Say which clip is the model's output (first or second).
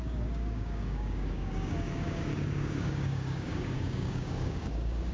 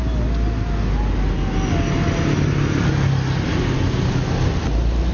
first